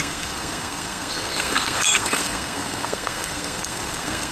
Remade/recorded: remade